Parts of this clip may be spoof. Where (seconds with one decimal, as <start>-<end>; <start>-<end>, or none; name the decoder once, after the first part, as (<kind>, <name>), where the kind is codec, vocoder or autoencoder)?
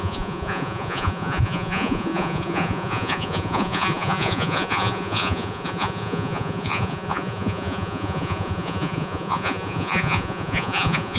0.0-11.2 (vocoder, Vocos)